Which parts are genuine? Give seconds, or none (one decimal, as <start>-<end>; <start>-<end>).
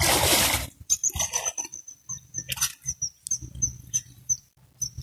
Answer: 1.0-3.9